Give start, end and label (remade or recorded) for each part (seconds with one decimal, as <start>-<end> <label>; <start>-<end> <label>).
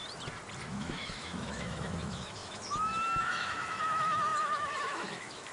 0.0-0.7 recorded; 0.7-5.5 remade